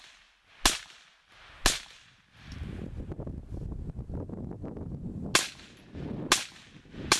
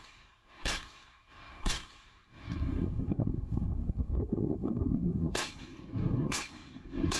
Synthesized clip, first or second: second